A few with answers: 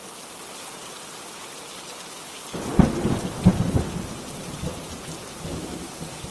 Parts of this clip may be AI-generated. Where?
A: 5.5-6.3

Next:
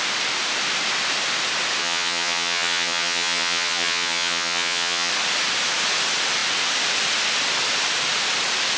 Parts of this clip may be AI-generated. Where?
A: 1.8-5.1